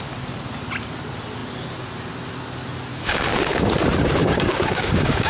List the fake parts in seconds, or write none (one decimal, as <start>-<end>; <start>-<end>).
2.9-3.7; 4.2-5.3